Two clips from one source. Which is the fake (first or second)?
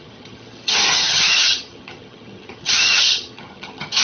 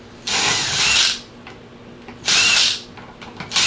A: first